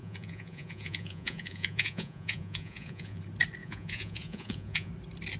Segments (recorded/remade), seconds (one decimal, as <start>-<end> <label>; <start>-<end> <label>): 0.0-3.2 remade; 3.2-3.6 recorded; 3.6-4.9 remade; 4.9-5.4 recorded